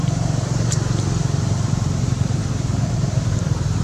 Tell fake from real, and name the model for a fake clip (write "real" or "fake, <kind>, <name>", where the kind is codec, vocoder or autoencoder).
fake, vocoder, BigVGAN v2